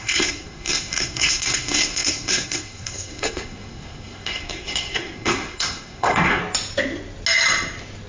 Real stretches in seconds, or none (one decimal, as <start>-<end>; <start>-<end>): 6.4-8.1